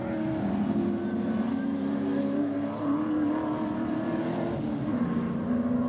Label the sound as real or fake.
real